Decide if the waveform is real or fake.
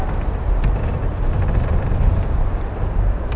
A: real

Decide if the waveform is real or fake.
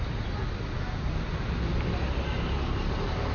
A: real